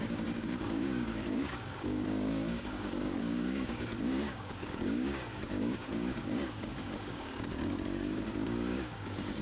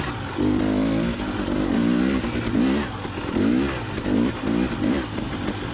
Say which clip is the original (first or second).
second